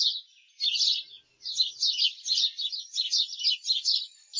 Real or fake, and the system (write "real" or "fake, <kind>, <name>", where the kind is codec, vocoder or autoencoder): real